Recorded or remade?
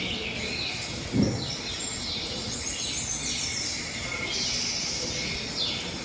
recorded